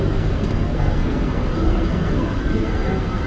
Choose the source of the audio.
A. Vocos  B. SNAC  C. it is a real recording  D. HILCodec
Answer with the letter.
B